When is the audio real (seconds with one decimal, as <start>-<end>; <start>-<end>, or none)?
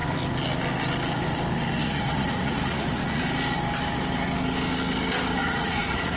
0.0-1.8; 3.2-5.4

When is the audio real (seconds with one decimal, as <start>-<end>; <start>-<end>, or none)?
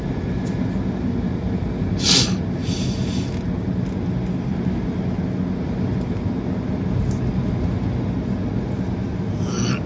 0.0-9.9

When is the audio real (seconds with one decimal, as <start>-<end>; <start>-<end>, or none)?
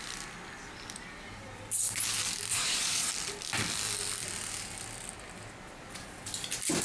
0.0-2.5; 3.1-6.8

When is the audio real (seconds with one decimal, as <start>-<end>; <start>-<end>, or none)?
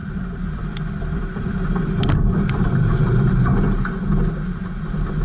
2.7-5.2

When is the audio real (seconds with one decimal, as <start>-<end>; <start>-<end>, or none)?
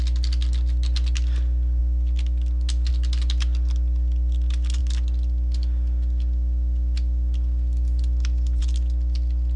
0.0-4.8; 8.6-9.6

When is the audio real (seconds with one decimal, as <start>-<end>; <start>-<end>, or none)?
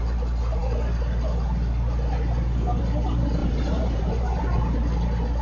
0.0-3.4; 4.4-5.4